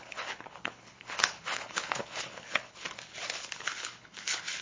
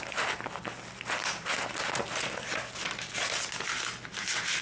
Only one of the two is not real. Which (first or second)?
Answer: first